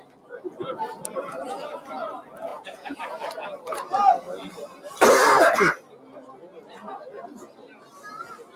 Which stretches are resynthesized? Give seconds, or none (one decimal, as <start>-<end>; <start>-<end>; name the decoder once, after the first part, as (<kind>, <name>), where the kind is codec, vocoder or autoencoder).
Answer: 2.5-3.0 (vocoder, Vocos)